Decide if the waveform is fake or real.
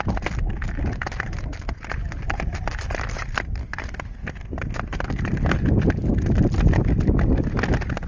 real